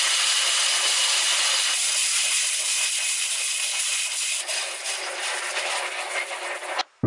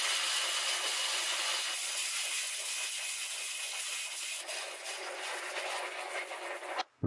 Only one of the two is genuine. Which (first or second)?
first